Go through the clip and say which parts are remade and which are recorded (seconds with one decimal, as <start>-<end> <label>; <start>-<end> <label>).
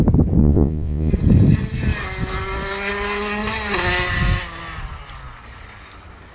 0.0-0.4 recorded; 0.4-1.1 remade; 1.1-6.3 recorded